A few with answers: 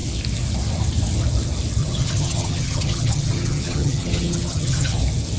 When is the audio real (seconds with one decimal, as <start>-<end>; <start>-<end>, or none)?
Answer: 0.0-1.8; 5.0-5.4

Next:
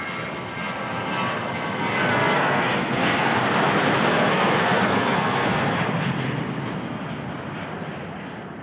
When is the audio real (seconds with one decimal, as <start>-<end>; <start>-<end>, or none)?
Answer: 0.0-2.1; 3.4-4.1; 5.7-8.6

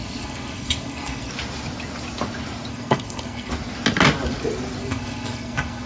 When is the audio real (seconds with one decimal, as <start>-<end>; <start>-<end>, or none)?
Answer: 1.3-2.7; 3.5-4.8

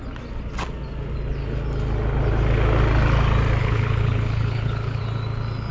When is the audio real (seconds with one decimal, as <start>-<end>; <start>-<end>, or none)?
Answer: 0.0-3.6; 5.0-5.7